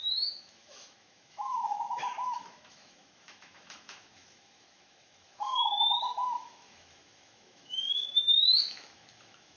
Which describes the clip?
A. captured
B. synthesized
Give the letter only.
B